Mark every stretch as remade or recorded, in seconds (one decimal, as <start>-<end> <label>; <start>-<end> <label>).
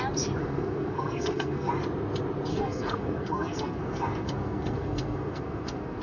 0.0-0.4 recorded; 0.4-1.7 remade; 1.7-2.5 recorded; 2.5-6.0 remade